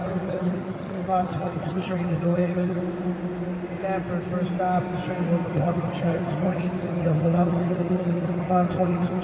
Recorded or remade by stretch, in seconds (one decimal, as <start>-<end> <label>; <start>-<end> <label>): 0.0-2.8 remade; 2.8-5.5 recorded; 5.5-9.2 remade